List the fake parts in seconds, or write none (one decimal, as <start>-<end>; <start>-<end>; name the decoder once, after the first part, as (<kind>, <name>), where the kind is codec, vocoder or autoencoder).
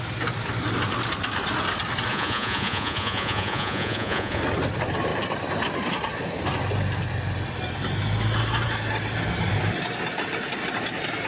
2.1-4.4 (vocoder, Vocos)